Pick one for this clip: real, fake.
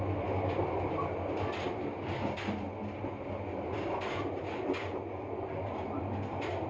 real